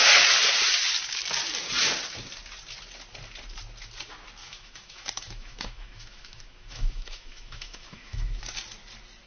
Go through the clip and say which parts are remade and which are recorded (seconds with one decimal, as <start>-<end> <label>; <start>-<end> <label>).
0.0-4.4 recorded; 4.4-8.4 remade; 8.4-9.3 recorded